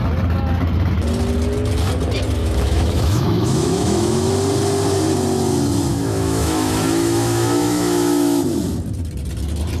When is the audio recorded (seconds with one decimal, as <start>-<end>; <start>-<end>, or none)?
0.0-2.4; 4.3-5.9; 8.4-9.8